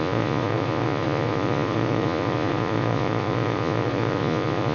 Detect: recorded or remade remade